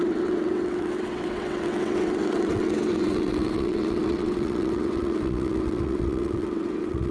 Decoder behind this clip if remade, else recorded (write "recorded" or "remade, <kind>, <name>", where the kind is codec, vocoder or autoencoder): remade, vocoder, WaveNeXt